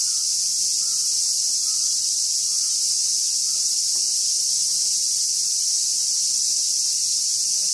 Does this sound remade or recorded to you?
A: recorded